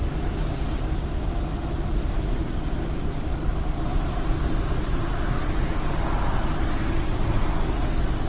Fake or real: real